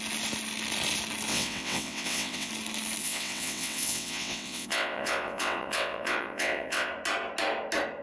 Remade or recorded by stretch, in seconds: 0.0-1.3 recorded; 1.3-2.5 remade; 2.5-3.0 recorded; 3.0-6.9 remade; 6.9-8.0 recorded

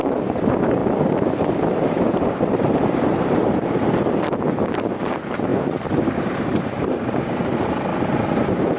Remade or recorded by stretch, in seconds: 0.0-0.8 remade; 0.8-1.7 recorded; 1.7-7.9 remade; 7.9-8.4 recorded; 8.4-8.8 remade

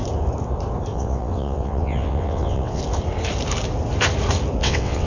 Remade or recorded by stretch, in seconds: 0.0-0.9 recorded; 0.9-2.8 remade; 2.8-4.6 recorded; 4.6-5.1 remade

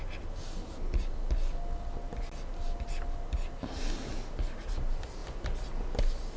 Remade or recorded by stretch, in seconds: 0.0-6.4 recorded

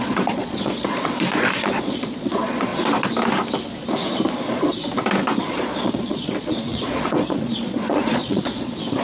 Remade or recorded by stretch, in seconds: 0.0-2.7 remade; 2.7-4.3 recorded; 4.3-4.8 remade; 4.8-5.5 recorded; 5.5-9.0 remade